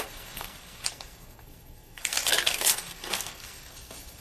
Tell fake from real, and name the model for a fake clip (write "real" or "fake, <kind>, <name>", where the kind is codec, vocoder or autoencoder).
fake, codec, SNAC